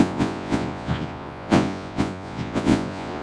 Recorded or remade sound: remade